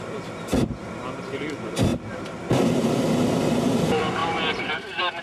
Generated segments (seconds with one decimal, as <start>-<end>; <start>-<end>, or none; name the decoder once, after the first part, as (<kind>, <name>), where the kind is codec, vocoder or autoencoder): 0.0-0.5 (vocoder, BigVGAN v2); 1.2-5.2